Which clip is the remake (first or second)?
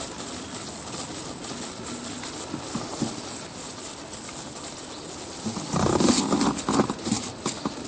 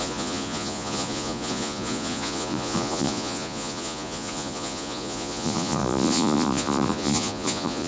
second